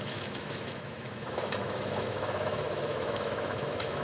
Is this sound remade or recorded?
remade